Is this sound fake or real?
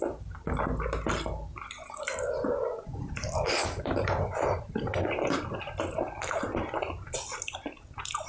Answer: real